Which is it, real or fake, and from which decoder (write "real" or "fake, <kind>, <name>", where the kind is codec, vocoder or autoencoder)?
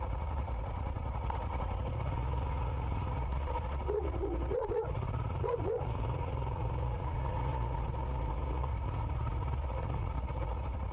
fake, vocoder, Vocos